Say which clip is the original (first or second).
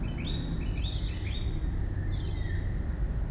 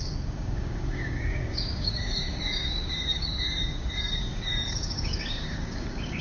first